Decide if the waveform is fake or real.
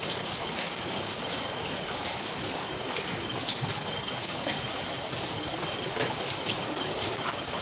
fake